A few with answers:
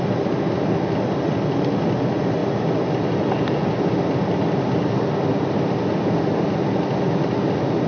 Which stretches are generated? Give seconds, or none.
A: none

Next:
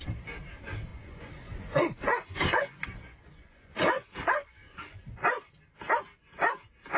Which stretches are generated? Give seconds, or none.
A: 0.9-5.1 (vocoder, Vocos)